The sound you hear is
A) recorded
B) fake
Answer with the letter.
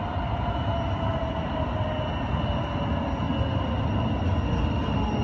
A